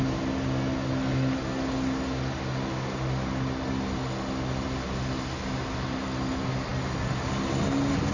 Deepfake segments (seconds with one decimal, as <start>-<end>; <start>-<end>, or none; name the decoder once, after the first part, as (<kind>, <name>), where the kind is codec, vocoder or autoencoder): none